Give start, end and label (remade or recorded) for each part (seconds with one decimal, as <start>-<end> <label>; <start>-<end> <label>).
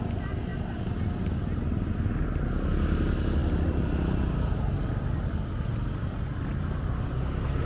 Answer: 0.0-7.7 recorded